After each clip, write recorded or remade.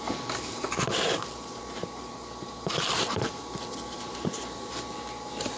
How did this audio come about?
recorded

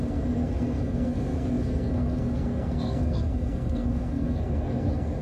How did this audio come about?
remade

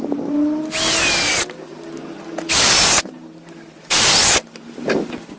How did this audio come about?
recorded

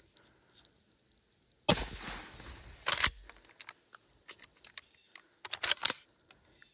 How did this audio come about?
recorded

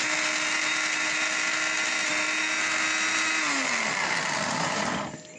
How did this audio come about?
recorded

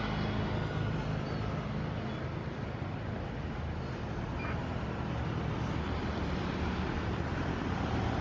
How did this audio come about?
recorded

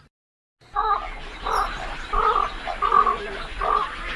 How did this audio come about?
recorded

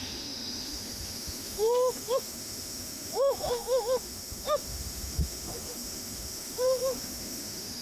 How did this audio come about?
remade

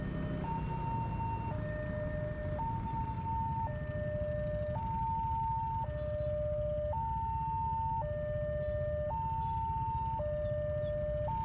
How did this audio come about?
recorded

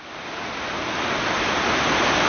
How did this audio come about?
recorded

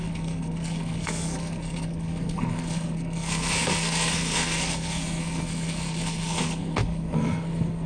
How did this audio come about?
remade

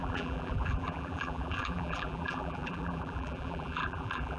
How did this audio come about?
remade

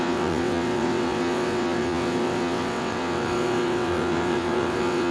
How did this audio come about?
remade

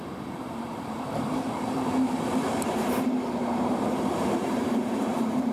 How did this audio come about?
remade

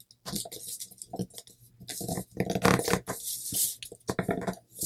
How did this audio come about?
recorded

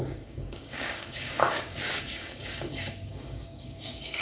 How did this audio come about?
remade